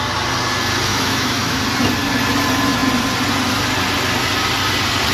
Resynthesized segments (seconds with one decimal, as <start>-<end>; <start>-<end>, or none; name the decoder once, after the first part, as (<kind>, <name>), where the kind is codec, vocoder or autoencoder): 0.9-1.6 (autoencoder, DAC-VAE)

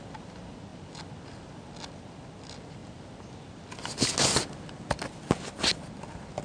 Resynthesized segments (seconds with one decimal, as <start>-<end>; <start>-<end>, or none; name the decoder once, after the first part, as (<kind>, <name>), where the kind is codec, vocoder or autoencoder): none

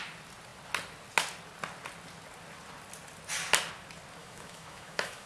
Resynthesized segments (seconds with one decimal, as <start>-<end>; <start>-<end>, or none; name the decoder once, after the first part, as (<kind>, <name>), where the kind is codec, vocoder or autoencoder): 4.2-5.3 (autoencoder, DAC-VAE)

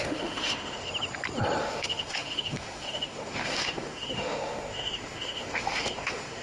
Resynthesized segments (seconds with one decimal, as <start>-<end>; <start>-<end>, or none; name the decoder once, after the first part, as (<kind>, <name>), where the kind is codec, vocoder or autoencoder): 0.0-0.9 (autoencoder, DAC-VAE); 1.6-6.4